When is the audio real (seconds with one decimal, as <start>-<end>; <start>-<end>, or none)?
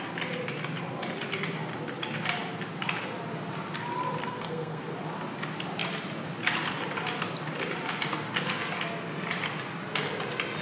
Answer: 0.0-4.2; 4.8-10.6